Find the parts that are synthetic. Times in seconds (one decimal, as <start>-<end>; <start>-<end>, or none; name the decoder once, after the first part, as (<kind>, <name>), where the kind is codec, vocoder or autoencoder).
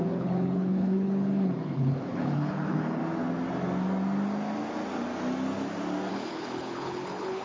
0.0-3.0 (codec, HILCodec); 6.1-7.4